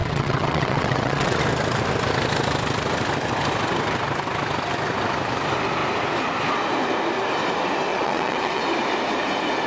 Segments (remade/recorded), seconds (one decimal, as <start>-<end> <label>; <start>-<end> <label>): 0.0-1.4 remade; 1.4-7.9 recorded; 7.9-8.6 remade; 8.6-9.7 recorded